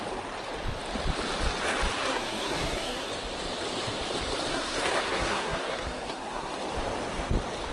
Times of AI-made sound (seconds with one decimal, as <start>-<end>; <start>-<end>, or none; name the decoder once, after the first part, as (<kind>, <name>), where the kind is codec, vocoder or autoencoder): 2.0-3.1 (codec, SNAC); 4.5-6.5